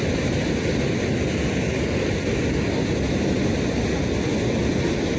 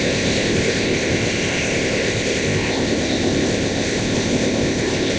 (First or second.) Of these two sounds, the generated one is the second